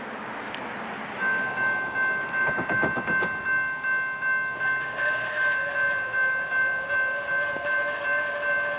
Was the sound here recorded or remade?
recorded